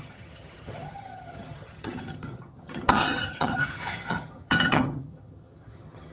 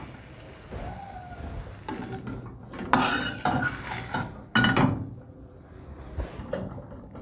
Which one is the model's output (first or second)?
first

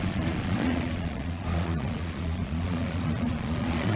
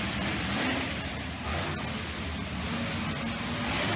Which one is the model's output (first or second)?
first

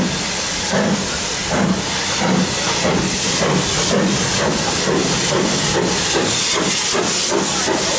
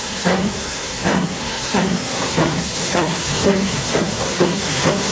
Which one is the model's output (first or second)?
second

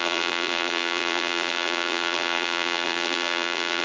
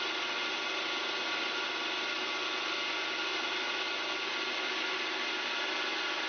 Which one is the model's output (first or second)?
first